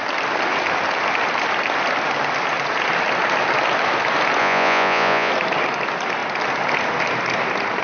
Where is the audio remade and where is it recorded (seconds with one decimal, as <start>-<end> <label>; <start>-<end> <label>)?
0.0-4.4 recorded; 4.4-5.3 remade; 5.3-7.8 recorded

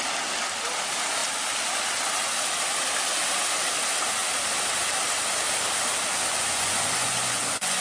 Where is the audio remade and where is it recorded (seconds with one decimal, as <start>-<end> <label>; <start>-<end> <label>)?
0.0-6.3 recorded; 6.3-7.8 remade

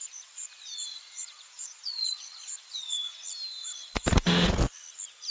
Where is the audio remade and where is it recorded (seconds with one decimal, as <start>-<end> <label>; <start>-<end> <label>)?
0.0-3.2 remade; 3.2-3.6 recorded; 3.6-4.6 remade; 4.6-5.3 recorded